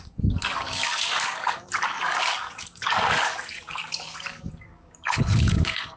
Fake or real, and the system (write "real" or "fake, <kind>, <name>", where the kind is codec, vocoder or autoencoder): fake, codec, DAC